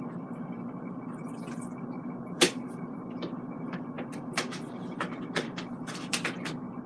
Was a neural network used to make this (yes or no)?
yes